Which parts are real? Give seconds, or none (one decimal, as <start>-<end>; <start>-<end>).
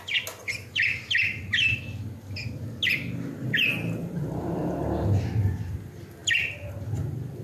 0.0-7.4